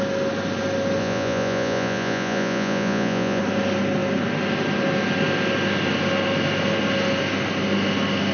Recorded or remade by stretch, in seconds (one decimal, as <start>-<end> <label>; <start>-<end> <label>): 0.0-1.0 recorded; 1.0-3.4 remade; 3.4-8.3 recorded